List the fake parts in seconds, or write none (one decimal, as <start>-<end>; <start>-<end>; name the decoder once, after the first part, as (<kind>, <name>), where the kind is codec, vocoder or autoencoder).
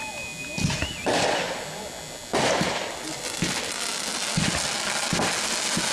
none